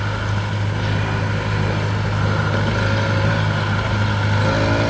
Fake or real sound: real